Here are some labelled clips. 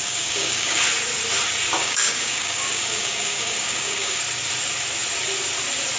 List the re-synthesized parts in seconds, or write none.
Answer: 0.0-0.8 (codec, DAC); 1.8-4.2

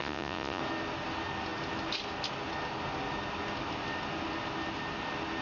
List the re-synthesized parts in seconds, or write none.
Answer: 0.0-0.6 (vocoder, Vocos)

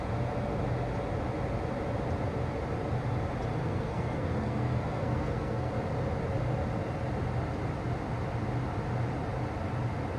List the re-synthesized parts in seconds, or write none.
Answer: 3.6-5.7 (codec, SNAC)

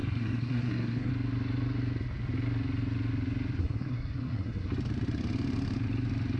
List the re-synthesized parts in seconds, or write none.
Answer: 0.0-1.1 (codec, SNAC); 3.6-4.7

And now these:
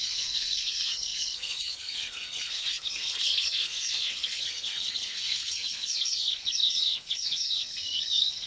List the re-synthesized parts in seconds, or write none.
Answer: 0.0-8.5 (codec, SNAC)